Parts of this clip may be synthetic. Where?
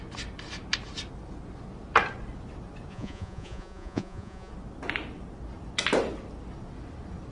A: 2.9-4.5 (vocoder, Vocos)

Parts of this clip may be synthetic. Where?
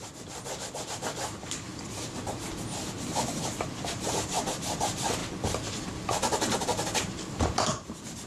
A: 0.0-5.2 (vocoder, BigVGAN v2); 7.3-8.3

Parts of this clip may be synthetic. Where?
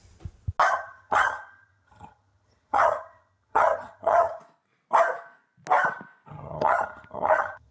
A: 0.7-4.4 (vocoder, HiFi-GAN); 6.3-7.7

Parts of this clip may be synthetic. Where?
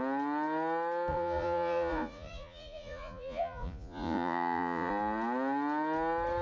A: 1.1-4.9 (vocoder, Vocos)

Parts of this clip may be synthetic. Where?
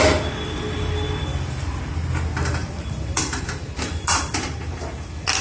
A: 2.6-4.8 (vocoder, BigVGAN v2)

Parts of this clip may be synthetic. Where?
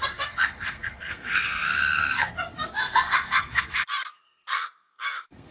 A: 0.0-5.5 (codec, SNAC)